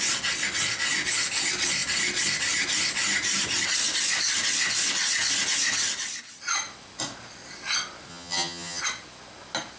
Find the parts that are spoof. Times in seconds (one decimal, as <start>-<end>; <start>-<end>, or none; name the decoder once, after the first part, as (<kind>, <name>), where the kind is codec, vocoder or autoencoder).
8.1-8.8 (vocoder, HiFi-GAN)